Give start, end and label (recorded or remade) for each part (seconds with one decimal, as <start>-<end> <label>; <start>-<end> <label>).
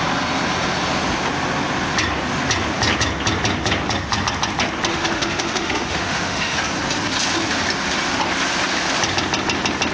0.0-4.9 recorded; 4.9-6.6 remade; 6.6-9.9 recorded